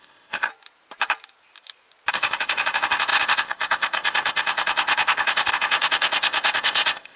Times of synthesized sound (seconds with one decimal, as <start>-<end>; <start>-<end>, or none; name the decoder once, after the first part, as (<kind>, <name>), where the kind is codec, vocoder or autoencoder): 0.0-0.5 (codec, ZipCodec); 2.1-7.2